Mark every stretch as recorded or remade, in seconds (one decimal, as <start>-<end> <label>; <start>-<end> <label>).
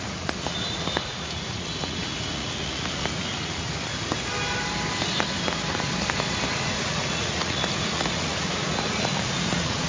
0.0-3.9 remade; 3.9-6.5 recorded; 6.5-9.9 remade